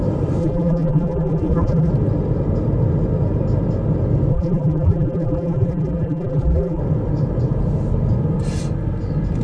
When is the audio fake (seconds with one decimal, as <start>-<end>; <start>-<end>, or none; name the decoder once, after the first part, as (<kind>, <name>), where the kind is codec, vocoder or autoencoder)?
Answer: 0.4-1.9 (vocoder, BigVGAN v2); 4.3-6.8